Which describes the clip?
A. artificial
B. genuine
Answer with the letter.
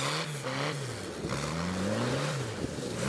B